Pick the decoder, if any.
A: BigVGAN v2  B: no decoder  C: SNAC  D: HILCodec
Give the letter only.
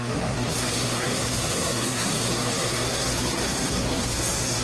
C